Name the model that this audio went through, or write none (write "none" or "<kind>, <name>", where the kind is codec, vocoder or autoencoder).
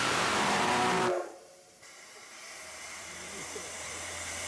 vocoder, BigVGAN v2